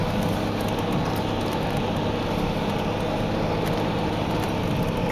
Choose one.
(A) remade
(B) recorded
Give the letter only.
B